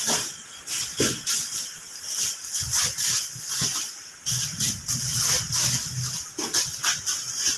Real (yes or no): yes